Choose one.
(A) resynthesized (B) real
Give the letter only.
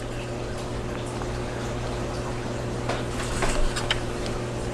B